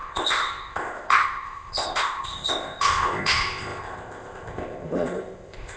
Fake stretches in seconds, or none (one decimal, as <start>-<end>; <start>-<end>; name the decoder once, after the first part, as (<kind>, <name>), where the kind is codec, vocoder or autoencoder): 0.0-5.8 (codec, ZipCodec)

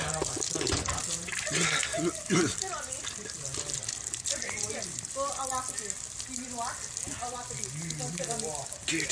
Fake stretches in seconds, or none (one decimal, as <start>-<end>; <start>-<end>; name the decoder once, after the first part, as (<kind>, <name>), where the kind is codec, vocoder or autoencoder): none

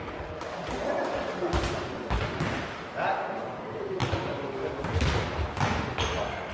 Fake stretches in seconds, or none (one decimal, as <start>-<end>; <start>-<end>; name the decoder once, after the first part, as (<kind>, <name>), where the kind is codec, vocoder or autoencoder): none

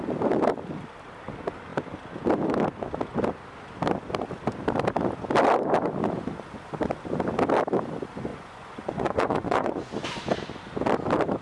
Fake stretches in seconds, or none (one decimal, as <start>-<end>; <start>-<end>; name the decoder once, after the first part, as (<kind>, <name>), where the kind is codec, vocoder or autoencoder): 8.3-9.9 (vocoder, Vocos)

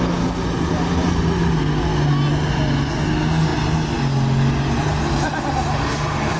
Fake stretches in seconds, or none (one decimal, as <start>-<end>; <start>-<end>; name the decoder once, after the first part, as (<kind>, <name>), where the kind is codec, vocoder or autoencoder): none

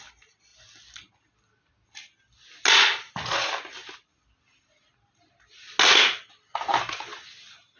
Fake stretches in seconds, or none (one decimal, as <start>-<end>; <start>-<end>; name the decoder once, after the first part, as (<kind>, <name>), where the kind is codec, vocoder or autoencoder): none

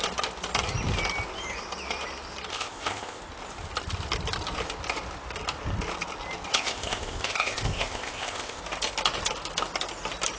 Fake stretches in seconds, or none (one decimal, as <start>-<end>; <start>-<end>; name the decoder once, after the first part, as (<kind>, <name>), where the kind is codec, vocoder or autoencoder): 2.5-3.2 (codec, ZipCodec); 6.5-8.6